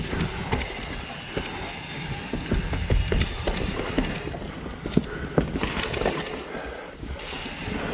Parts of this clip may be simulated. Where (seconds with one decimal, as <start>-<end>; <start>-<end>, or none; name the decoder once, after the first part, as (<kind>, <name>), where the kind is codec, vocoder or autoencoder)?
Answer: none